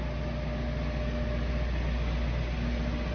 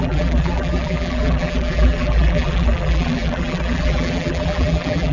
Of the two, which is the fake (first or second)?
second